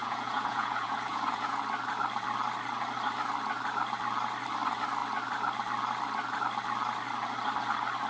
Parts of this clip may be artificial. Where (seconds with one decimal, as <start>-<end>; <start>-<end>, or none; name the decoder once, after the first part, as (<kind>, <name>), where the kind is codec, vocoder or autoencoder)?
0.0-1.6 (vocoder, Vocos)